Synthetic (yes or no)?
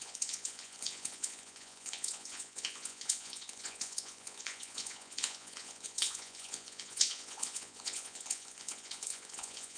yes